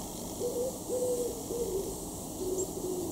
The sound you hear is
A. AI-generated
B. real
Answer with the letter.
B